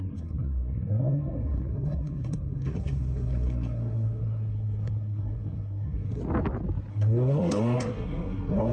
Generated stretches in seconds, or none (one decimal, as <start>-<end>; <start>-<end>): 0.0-6.2; 6.9-8.7